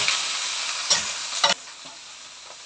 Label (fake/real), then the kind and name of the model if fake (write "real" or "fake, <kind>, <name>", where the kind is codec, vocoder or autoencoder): real